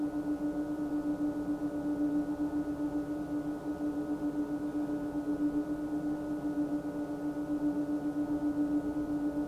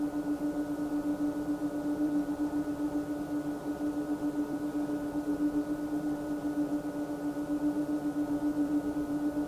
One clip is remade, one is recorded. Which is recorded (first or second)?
first